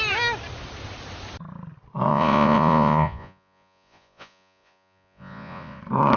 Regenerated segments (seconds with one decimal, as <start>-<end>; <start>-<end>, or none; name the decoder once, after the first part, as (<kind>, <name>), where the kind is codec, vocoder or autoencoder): 2.1-5.8 (vocoder, Vocos)